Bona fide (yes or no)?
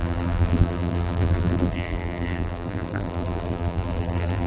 no